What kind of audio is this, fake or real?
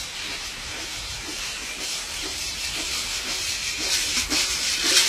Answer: fake